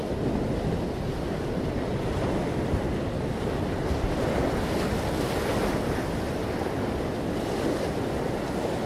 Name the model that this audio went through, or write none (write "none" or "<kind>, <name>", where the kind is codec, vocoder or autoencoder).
none